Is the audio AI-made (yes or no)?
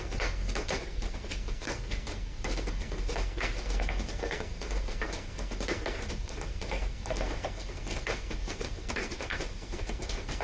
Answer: yes